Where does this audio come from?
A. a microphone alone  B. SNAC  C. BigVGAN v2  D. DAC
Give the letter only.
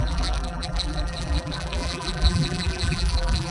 C